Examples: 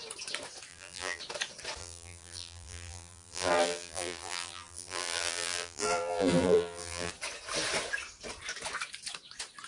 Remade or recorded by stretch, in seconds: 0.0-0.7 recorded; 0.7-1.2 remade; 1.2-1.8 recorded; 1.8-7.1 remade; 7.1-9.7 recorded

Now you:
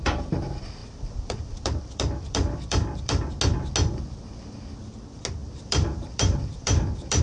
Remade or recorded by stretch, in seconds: 0.0-0.8 recorded; 0.8-3.3 remade; 3.3-5.4 recorded; 5.4-7.2 remade

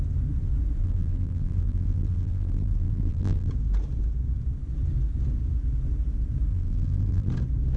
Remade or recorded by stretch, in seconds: 0.0-0.8 recorded; 0.8-3.5 remade; 3.5-6.5 recorded; 6.5-7.3 remade; 7.3-7.8 recorded

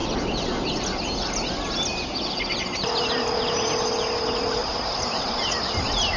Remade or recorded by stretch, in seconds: 0.0-4.6 recorded; 4.6-5.5 remade; 5.5-6.2 recorded